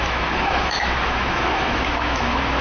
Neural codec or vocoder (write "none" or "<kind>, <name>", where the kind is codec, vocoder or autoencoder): autoencoder, DAC-VAE